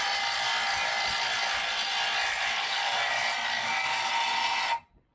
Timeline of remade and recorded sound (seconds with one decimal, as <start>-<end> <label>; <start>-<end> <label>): 0.0-2.6 recorded; 2.6-3.1 remade; 3.1-3.5 recorded; 3.5-4.1 remade; 4.1-5.1 recorded